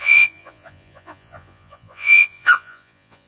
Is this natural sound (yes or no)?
no